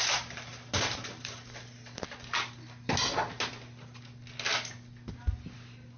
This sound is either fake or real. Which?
real